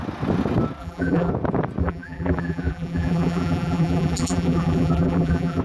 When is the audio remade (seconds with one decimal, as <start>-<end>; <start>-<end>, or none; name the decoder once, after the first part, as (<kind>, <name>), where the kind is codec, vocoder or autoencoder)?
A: 0.8-1.3 (vocoder, BigVGAN v2); 1.8-5.6